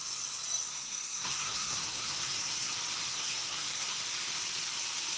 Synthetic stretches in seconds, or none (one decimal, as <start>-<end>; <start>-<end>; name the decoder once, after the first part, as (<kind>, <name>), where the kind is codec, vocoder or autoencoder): 0.7-2.7 (codec, SNAC); 3.1-4.0